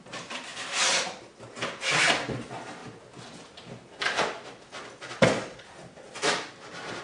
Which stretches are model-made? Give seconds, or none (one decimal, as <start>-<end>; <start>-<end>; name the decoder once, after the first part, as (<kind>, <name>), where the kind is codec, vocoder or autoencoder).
none